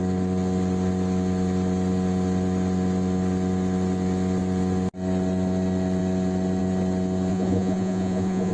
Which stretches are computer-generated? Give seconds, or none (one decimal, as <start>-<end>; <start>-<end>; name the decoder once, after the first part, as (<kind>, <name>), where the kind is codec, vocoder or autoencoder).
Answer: 7.3-8.5 (vocoder, Vocos)